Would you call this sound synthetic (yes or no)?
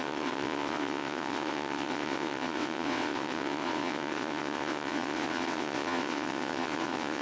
yes